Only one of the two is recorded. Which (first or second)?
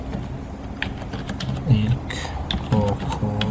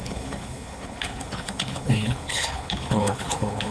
first